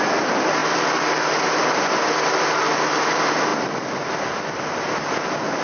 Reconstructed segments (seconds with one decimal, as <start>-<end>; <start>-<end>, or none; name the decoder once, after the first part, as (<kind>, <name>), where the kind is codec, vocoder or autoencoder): none